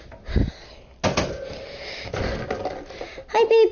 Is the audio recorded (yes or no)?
yes